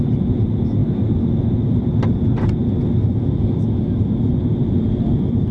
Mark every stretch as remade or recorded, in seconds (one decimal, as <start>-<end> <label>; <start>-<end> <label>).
0.0-5.5 recorded

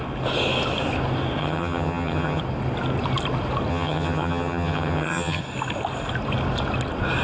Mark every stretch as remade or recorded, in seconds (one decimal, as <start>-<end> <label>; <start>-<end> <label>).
0.0-1.4 recorded; 1.4-2.4 remade; 2.4-3.7 recorded; 3.7-5.4 remade; 5.4-7.2 recorded

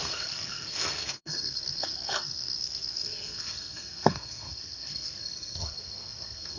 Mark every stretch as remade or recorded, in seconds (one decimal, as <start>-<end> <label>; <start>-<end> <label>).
0.0-6.6 remade

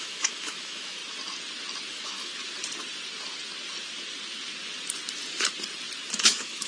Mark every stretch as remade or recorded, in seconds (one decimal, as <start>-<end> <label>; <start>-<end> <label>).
0.0-1.0 remade; 1.0-1.9 recorded; 1.9-2.3 remade; 2.3-6.2 recorded; 6.2-6.7 remade

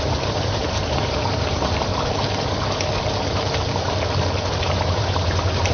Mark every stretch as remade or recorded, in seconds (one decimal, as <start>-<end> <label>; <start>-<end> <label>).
0.0-1.9 remade; 1.9-4.6 recorded; 4.6-5.7 remade